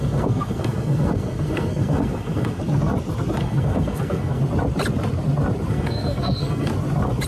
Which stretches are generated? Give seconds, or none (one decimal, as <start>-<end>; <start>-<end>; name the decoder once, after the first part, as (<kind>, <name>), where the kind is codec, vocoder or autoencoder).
0.0-2.6 (codec, SNAC); 3.4-4.4; 5.7-6.7